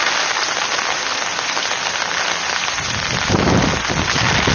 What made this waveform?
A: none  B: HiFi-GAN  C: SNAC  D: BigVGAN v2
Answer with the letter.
A